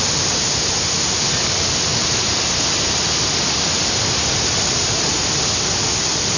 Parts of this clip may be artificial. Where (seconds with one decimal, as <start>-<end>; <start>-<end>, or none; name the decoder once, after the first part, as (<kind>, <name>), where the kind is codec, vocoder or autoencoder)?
none